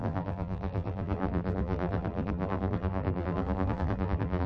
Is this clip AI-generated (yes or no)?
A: yes